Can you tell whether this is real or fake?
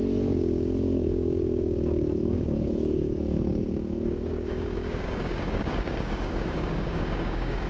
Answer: fake